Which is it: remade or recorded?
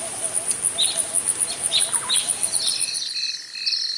recorded